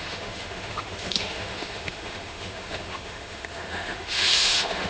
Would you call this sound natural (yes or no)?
no